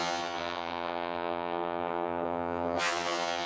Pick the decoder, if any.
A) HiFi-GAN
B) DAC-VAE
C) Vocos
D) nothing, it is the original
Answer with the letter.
A